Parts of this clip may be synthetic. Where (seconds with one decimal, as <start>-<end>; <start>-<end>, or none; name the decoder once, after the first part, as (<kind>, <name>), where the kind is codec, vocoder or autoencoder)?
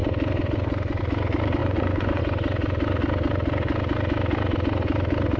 1.6-2.2 (vocoder, Vocos)